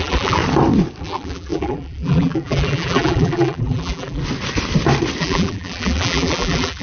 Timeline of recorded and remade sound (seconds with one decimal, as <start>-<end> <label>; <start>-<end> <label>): 0.0-0.4 remade; 0.4-1.0 recorded; 1.0-4.2 remade; 4.2-5.2 recorded; 5.2-6.8 remade